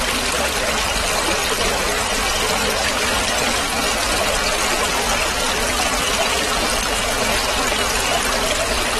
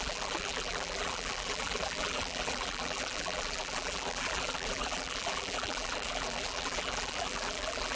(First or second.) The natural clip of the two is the first